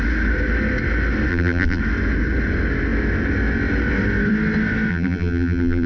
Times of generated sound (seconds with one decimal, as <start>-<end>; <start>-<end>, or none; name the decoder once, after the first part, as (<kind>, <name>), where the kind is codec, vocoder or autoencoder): 1.3-1.8 (vocoder, BigVGAN v2); 4.9-5.9